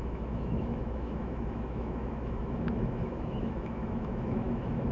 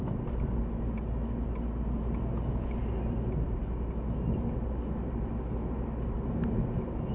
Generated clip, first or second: first